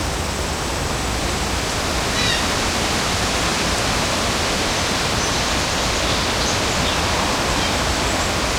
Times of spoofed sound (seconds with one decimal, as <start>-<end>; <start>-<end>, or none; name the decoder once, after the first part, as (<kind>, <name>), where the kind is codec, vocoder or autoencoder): 3.5-5.4 (vocoder, BigVGAN v2)